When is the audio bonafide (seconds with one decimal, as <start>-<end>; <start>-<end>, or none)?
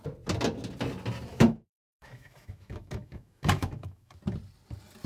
0.0-1.3; 4.2-5.1